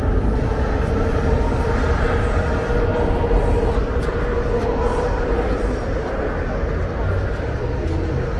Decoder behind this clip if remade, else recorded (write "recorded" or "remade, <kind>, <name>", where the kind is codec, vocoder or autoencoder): recorded